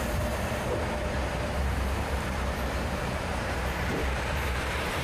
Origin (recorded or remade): remade